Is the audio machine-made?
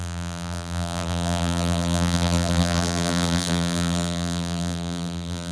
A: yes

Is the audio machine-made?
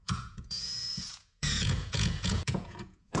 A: yes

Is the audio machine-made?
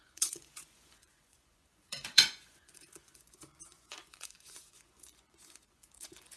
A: yes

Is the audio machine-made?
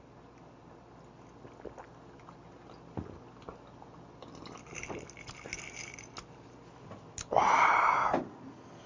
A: no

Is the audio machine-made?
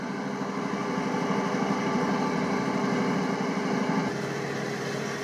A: no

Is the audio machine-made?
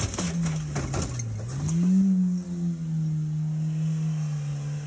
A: no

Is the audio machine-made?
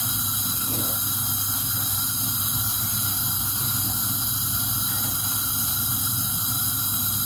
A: no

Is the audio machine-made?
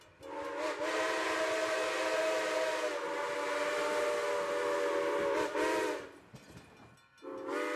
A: no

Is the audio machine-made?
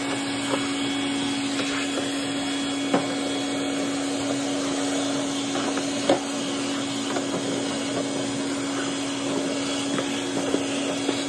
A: no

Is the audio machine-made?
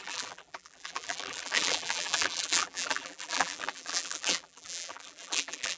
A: yes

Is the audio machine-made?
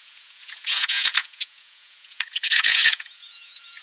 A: yes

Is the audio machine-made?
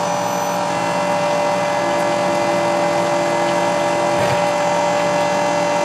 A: no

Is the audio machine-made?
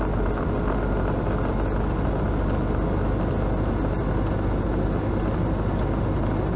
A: no